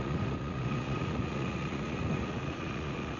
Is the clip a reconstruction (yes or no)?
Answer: yes